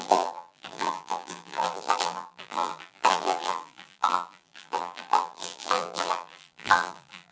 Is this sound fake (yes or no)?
yes